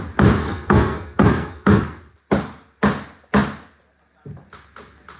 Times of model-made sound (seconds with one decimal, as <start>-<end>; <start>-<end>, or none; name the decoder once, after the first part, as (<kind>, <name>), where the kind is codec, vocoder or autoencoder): 0.4-2.0 (codec, SNAC)